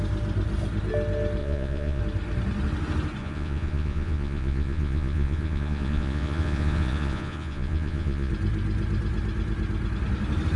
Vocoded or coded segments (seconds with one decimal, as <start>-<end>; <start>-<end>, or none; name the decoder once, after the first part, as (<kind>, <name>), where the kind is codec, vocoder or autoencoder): 1.4-2.0 (vocoder, Vocos); 3.2-8.3